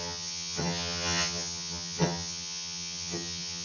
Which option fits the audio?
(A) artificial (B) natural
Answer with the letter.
A